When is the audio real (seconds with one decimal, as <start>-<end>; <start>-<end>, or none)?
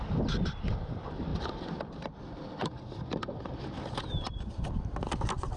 0.0-1.3; 4.7-5.6